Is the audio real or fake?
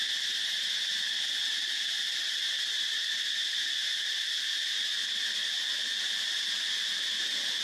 real